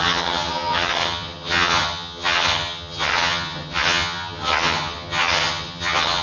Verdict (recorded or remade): remade